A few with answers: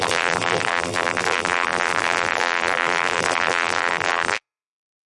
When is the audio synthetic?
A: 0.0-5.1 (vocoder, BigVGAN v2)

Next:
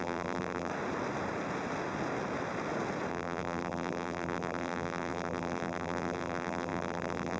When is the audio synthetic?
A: 0.0-0.7 (vocoder, BigVGAN v2); 3.1-7.4

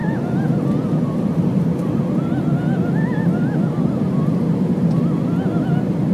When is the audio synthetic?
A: none

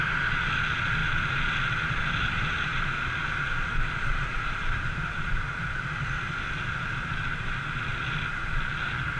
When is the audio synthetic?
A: none

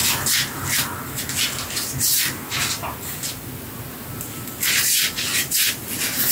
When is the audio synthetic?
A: none

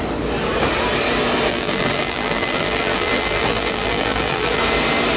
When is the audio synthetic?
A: 1.5-4.6 (vocoder, BigVGAN v2)